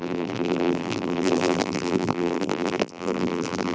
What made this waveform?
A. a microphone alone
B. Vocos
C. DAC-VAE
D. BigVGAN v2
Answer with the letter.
D